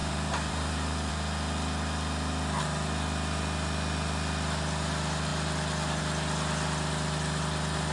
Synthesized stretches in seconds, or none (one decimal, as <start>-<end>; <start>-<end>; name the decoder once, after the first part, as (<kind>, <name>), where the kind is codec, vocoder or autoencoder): 0.0-1.1 (vocoder, BigVGAN v2)